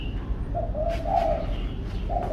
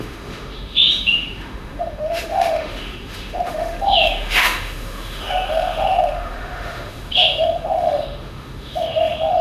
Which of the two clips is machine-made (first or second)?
second